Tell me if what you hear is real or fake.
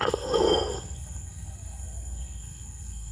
fake